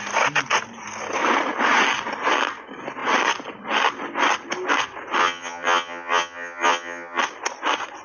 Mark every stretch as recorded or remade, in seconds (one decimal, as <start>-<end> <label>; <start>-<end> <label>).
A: 0.0-5.2 recorded; 5.2-7.2 remade; 7.2-8.0 recorded